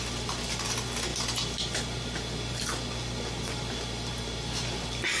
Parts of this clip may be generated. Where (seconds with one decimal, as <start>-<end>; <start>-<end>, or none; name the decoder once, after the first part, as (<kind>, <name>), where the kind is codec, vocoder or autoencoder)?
none